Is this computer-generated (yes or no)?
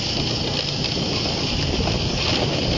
no